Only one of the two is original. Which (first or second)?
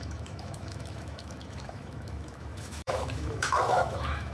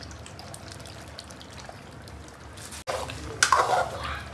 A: second